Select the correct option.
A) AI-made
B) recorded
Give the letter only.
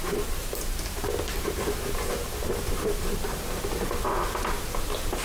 A